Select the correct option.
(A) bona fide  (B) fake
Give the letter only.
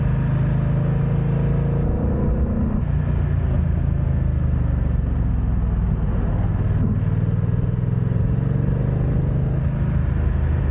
A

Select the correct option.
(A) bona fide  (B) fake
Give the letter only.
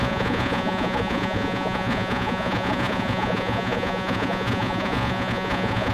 B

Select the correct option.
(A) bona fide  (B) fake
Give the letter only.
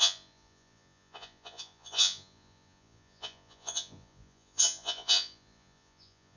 B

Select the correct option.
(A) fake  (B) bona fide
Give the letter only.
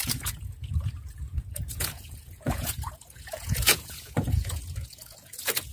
A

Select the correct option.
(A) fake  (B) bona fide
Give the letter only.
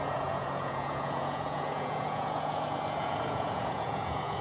A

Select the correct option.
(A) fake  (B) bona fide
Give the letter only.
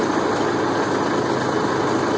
B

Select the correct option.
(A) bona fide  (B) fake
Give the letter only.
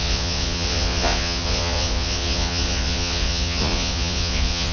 B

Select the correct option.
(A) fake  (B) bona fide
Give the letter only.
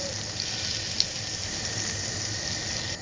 B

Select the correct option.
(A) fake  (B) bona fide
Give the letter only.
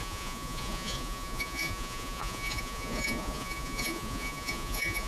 A